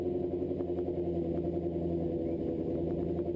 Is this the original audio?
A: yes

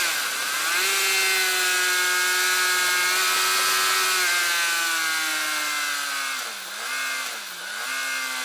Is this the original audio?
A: yes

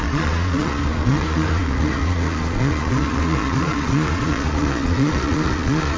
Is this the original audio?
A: no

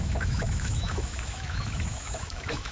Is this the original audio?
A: no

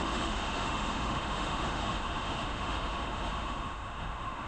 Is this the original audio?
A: no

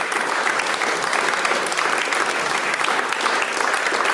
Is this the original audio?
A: yes